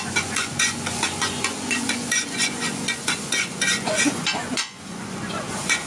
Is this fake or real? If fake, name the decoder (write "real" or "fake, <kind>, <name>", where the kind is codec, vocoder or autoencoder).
fake, vocoder, Vocos